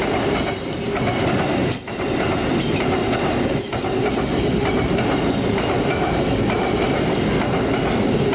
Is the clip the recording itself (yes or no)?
yes